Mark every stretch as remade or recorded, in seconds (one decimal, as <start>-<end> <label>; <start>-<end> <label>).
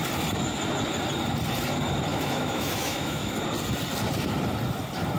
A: 0.0-2.1 recorded; 2.1-3.3 remade; 3.3-5.2 recorded